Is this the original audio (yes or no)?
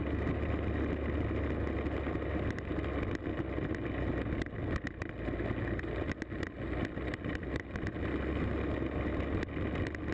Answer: yes